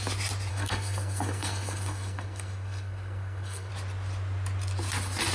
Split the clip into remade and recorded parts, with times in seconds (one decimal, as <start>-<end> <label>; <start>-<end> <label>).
0.0-0.5 recorded; 0.5-3.7 remade; 3.7-5.3 recorded